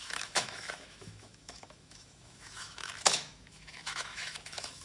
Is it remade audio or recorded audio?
remade